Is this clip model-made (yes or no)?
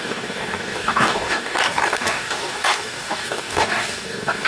yes